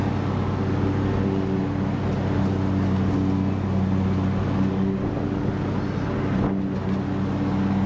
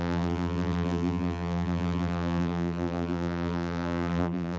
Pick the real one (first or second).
first